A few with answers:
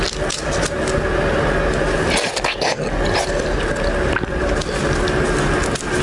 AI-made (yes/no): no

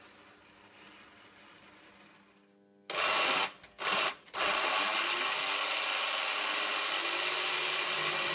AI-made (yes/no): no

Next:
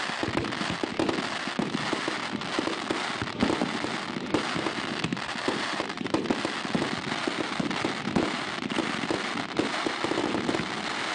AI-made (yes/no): no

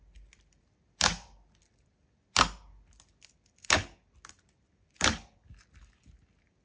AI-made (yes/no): no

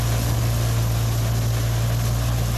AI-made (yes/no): no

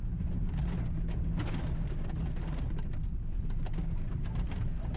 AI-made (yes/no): no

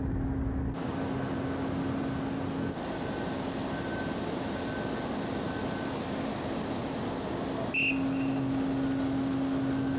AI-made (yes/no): no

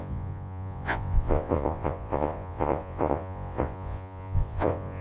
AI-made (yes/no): yes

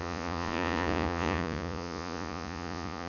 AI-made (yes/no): yes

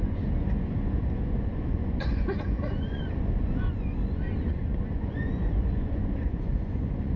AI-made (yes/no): yes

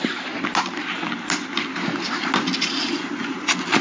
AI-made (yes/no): no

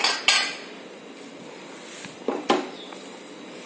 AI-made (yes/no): no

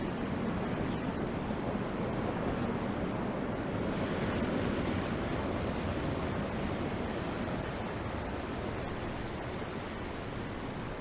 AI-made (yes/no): no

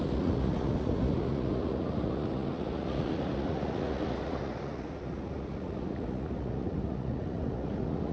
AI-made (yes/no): yes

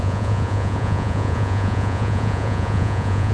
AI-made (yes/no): yes